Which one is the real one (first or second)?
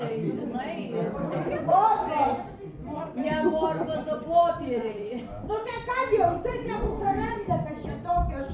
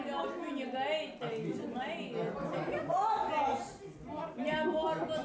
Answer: second